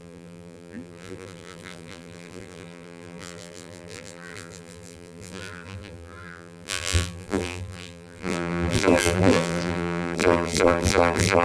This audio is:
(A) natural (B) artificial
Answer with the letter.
B